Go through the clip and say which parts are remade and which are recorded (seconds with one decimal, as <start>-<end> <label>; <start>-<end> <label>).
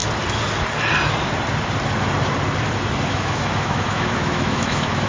0.0-3.1 recorded; 3.1-5.1 remade